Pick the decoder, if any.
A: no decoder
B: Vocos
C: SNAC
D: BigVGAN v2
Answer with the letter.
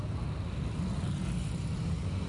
A